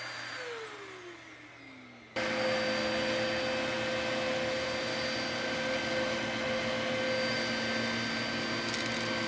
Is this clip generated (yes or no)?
no